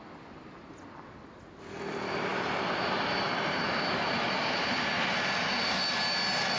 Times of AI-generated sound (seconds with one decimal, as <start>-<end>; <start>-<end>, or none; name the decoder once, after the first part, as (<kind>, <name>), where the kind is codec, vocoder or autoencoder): 2.3-4.9 (vocoder, BigVGAN v2)